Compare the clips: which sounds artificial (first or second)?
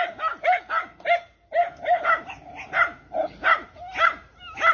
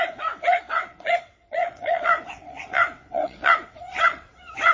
second